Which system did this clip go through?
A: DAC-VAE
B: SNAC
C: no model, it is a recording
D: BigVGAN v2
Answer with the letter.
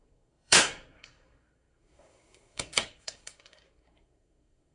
B